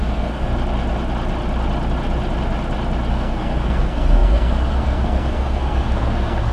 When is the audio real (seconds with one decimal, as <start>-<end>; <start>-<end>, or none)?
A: 0.5-3.1